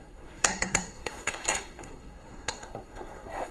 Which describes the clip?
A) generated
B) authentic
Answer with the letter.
A